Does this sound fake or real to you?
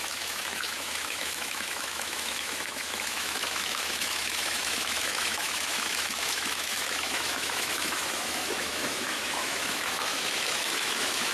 fake